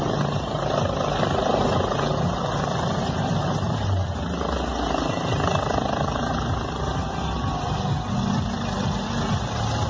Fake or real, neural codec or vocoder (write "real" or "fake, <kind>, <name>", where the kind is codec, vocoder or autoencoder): real